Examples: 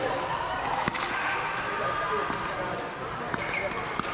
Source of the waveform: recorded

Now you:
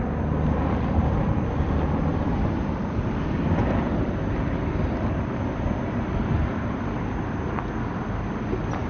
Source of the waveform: recorded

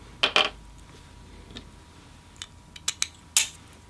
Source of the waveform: recorded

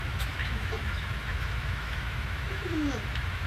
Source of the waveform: remade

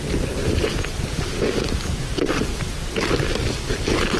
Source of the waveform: recorded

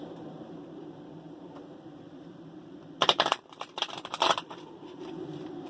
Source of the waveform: remade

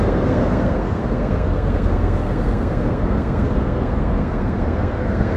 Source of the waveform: remade